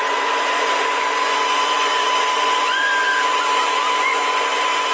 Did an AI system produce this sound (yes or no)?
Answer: yes